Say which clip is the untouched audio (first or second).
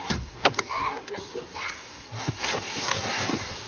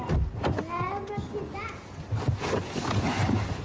second